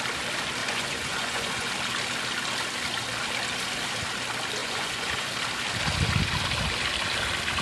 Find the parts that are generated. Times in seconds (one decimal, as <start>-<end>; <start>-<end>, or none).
0.6-1.7; 4.6-5.3